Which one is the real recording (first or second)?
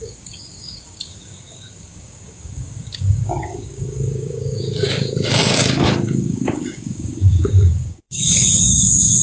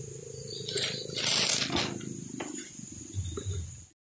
second